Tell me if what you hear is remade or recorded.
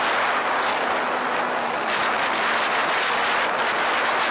recorded